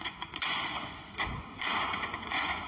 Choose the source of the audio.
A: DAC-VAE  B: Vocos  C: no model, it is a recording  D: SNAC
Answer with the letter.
B